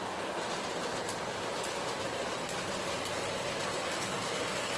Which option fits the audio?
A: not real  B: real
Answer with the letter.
B